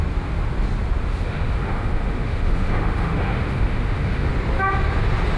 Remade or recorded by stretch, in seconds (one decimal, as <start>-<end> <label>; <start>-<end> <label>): 0.0-1.1 recorded; 1.1-4.3 remade; 4.3-5.4 recorded